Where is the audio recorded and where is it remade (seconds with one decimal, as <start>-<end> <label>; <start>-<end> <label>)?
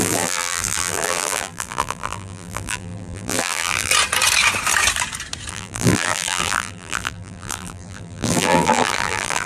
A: 0.0-3.9 remade; 3.9-5.5 recorded; 5.5-9.5 remade